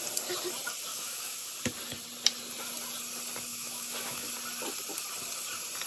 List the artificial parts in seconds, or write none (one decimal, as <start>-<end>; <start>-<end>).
0.9-1.5; 3.5-4.3